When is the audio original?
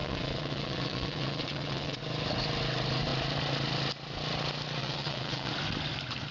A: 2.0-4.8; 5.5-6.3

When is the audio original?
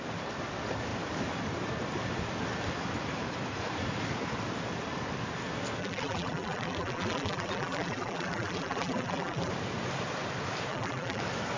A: 0.0-5.8; 9.5-10.7; 11.2-11.6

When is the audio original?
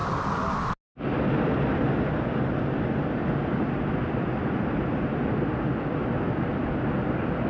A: 0.0-7.5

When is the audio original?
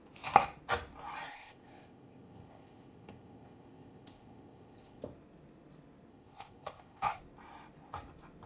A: 0.0-1.3; 5.0-6.1; 7.2-8.5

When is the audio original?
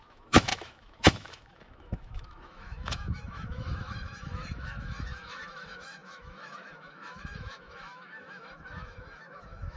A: none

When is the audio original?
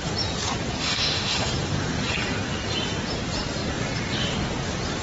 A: 0.0-0.8; 1.5-5.0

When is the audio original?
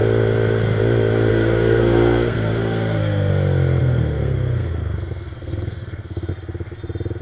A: 0.0-1.3; 3.3-3.8; 6.3-7.2